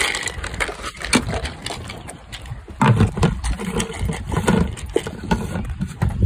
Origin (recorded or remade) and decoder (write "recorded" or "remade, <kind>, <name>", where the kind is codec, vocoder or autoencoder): recorded